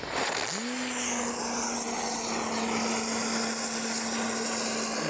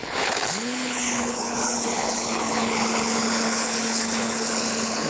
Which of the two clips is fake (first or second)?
second